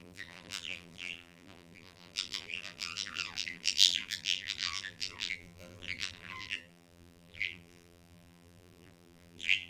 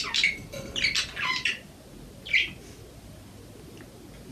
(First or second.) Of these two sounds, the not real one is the first